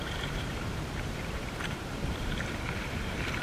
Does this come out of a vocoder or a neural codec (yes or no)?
yes